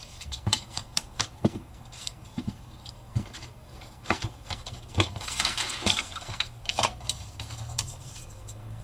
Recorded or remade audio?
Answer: remade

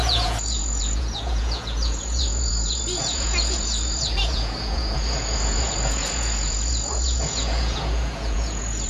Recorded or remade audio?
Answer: remade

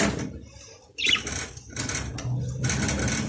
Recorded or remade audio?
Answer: recorded